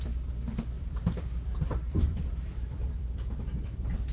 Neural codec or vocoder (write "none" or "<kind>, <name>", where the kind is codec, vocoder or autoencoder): vocoder, BigVGAN v2